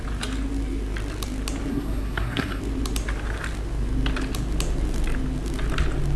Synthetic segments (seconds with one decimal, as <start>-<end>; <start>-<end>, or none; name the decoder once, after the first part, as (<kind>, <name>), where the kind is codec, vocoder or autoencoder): 1.7-2.6 (codec, SNAC)